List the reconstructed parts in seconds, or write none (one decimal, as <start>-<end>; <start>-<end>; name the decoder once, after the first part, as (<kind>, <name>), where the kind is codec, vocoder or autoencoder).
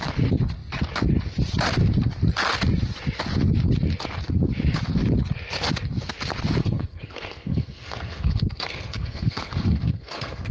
6.6-10.5 (codec, SNAC)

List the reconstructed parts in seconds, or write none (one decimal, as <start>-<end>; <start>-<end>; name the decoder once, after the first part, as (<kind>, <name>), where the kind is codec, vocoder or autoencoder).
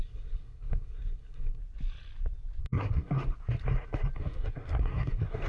0.0-1.6 (codec, SNAC); 2.6-3.2; 4.2-5.5